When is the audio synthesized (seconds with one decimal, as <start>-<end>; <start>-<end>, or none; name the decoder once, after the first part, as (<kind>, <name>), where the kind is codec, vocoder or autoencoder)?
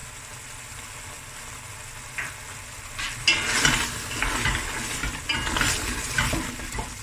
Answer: none